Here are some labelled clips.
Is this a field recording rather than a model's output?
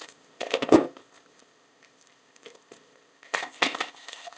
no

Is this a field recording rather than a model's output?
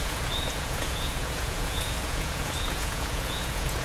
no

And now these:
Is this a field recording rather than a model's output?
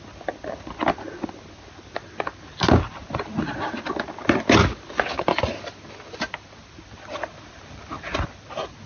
yes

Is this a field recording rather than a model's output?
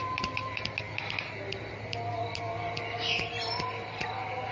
yes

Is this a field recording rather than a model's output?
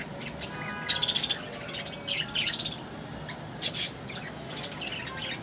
yes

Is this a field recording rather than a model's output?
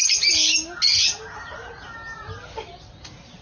yes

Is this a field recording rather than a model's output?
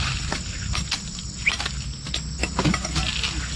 yes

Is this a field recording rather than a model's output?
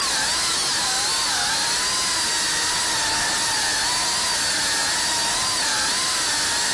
yes